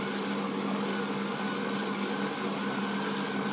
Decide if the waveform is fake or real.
real